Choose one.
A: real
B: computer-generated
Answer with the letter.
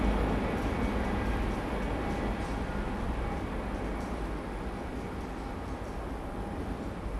A